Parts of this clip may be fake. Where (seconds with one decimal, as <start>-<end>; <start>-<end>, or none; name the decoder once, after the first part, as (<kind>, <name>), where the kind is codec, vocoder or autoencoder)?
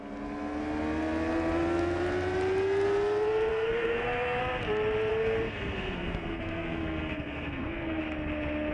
3.5-4.4 (codec, SNAC); 5.1-8.0